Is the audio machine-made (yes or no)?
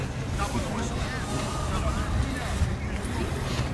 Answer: no